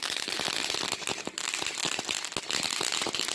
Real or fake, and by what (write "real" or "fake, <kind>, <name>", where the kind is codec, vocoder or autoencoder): real